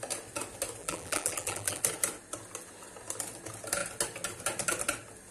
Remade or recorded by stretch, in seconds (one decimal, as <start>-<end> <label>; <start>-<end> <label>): 0.0-0.8 recorded; 0.8-1.8 remade; 1.8-5.3 recorded